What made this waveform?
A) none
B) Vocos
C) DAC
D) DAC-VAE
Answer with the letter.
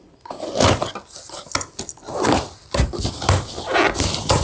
A